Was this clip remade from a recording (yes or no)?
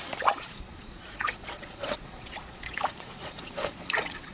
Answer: yes